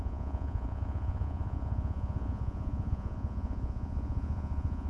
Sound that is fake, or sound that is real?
fake